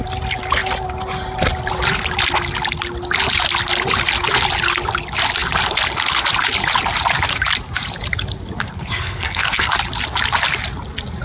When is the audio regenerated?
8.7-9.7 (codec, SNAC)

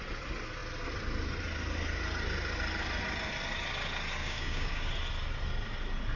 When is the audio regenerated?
4.2-4.9 (codec, DAC)

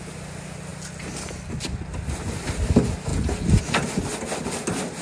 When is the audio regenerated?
none

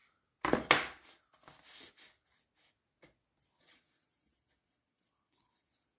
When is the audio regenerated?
3.6-6.0 (vocoder, Vocos)

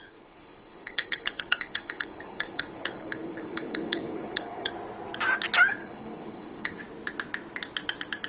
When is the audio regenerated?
0.0-4.7 (codec, HILCodec); 5.8-6.8

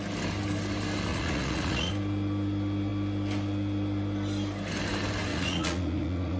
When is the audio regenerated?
1.1-1.9 (vocoder, Vocos); 5.3-6.4

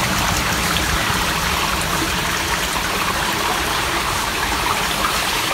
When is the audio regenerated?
1.0-1.5 (vocoder, BigVGAN v2); 1.9-5.5